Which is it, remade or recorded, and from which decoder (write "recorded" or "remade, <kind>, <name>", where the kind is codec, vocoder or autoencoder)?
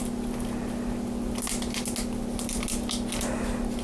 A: recorded